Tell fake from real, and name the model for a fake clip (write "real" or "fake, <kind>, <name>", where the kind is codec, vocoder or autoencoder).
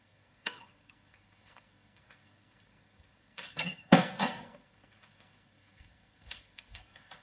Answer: fake, codec, SNAC